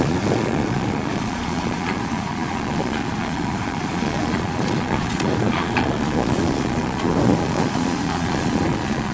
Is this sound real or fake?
fake